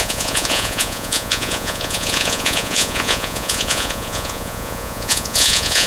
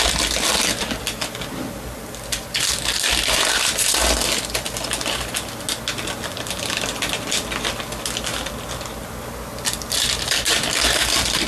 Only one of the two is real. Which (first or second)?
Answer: second